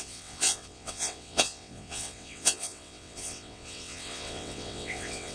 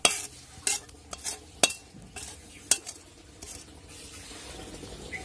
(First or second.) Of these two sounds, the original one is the second